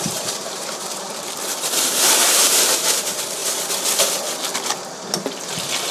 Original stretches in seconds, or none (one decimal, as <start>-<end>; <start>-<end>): 1.1-2.2; 3.4-5.9